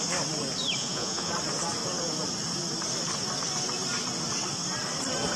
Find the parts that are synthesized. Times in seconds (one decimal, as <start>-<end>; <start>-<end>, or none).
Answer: 0.8-1.3